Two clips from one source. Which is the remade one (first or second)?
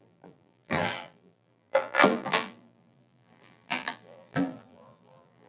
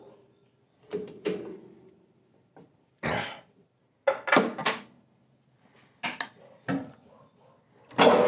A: first